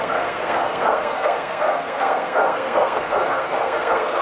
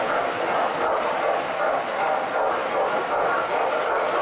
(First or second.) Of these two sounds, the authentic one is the second